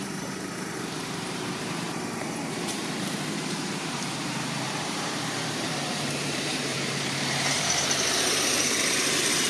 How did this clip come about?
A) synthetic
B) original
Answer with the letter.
A